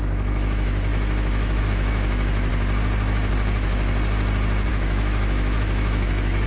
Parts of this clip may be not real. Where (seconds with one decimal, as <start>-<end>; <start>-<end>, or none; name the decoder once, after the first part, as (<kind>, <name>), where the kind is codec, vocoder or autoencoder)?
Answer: 0.0-2.5 (autoencoder, DAC-VAE); 4.7-6.5